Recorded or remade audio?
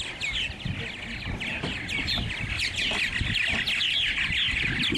recorded